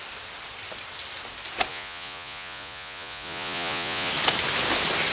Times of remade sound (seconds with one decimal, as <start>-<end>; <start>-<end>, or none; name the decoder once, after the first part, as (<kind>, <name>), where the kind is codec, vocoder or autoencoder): 1.7-4.1 (vocoder, Vocos)